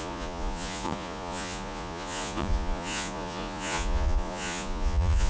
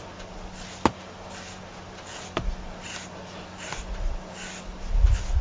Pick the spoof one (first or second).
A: first